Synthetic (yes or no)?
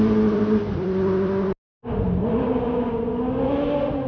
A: no